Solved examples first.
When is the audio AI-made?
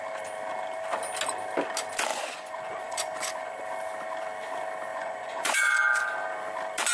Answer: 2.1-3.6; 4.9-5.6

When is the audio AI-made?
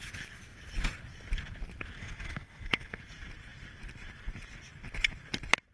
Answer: 2.0-3.0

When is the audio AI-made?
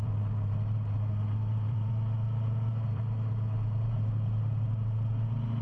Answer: 0.0-1.9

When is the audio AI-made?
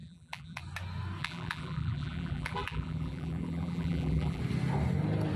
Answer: 0.0-0.6; 1.2-4.4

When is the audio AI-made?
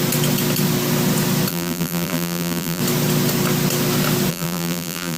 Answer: 1.5-2.8; 4.3-5.2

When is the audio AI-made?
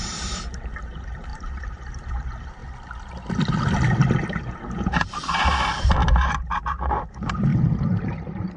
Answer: 0.0-2.6; 4.3-7.5; 8.1-8.6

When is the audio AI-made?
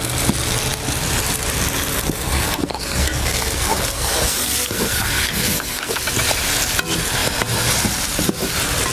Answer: 2.0-6.0